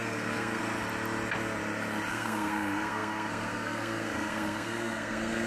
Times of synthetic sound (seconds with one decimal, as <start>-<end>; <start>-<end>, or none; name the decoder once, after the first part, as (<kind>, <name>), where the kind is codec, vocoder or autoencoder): 0.0-0.6 (codec, SNAC); 2.1-5.5